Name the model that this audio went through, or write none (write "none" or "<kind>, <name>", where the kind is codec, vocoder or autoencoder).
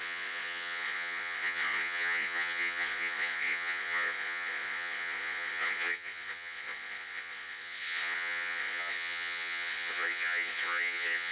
vocoder, Vocos